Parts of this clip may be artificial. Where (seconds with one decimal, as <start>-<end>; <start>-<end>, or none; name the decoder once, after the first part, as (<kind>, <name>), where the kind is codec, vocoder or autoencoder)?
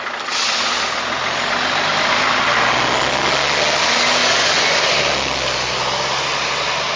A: 4.2-4.8 (vocoder, Vocos)